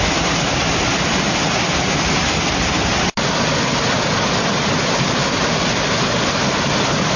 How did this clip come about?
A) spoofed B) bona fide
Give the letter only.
B